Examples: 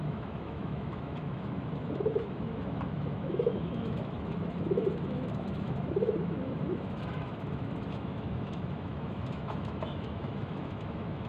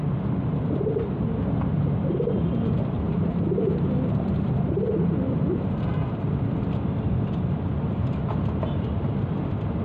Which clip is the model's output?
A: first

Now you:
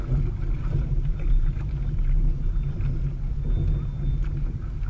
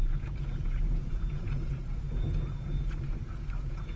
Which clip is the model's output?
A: second